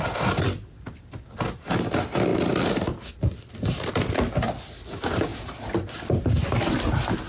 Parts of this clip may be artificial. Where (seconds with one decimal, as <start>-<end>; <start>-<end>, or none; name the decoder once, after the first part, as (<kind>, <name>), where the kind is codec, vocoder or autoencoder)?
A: 2.3-4.1 (vocoder, BigVGAN v2)